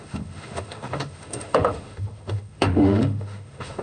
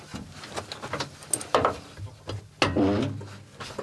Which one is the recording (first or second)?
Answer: second